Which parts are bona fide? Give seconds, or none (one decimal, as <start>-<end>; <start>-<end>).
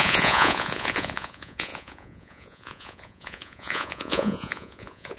none